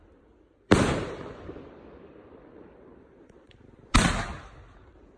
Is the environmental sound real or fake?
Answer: fake